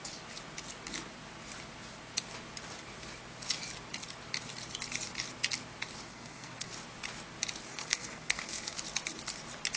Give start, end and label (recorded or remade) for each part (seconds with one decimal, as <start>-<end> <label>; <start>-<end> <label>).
0.0-6.1 recorded; 6.1-6.7 remade; 6.7-7.7 recorded; 7.7-8.8 remade; 8.8-9.8 recorded